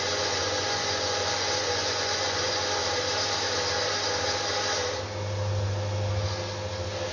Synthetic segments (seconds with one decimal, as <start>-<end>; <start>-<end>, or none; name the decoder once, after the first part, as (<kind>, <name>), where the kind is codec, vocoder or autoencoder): 0.0-2.8 (vocoder, Vocos)